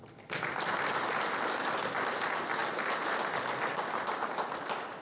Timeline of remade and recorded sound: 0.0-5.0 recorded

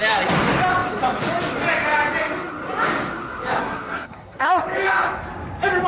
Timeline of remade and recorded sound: 0.0-3.6 recorded; 3.6-4.6 remade; 4.6-5.9 recorded

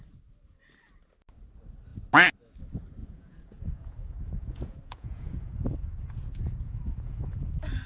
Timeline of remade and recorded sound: 0.0-3.0 recorded; 3.0-7.5 remade; 7.5-7.9 recorded

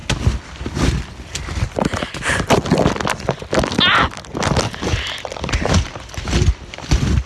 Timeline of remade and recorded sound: 0.0-7.3 recorded

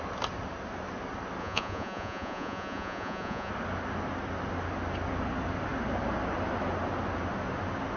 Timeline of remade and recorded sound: 0.0-1.4 recorded; 1.4-3.5 remade; 3.5-8.0 recorded

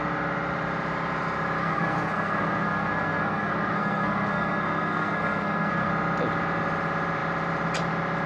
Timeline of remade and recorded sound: 0.0-1.6 recorded; 1.6-5.9 remade; 5.9-8.3 recorded

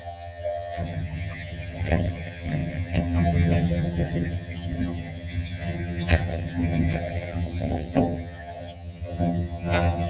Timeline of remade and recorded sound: 0.0-10.1 remade